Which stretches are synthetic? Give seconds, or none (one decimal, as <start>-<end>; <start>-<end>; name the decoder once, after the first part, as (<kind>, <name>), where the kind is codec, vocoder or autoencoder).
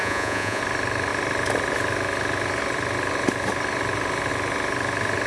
0.0-0.6 (vocoder, Vocos)